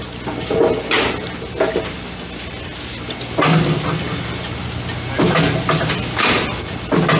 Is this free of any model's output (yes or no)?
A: yes